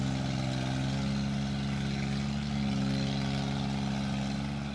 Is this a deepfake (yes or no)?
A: no